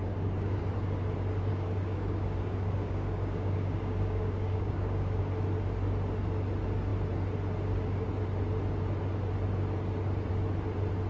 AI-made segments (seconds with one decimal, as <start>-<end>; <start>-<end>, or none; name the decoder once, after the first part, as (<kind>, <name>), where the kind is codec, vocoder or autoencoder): 0.0-0.6 (codec, DAC); 1.5-5.2